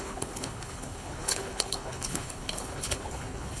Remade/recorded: remade